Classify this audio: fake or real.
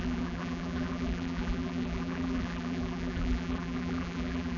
fake